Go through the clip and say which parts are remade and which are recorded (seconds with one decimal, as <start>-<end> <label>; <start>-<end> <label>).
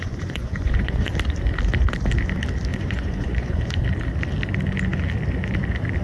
0.0-1.1 remade; 1.1-2.7 recorded; 2.7-3.8 remade; 3.8-6.0 recorded